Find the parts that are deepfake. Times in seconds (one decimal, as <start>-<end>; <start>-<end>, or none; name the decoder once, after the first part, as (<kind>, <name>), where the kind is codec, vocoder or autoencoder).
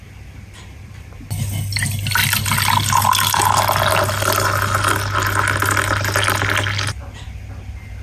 none